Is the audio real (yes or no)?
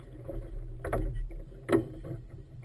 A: no